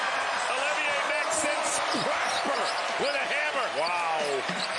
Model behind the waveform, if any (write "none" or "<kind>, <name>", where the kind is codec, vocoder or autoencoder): none